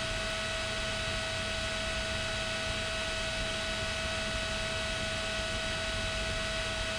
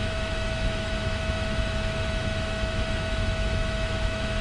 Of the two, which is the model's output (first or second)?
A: second